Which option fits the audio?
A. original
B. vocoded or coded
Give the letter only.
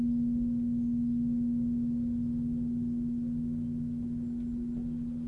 A